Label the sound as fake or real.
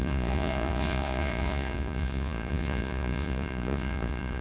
fake